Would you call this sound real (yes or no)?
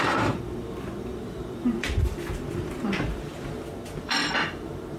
no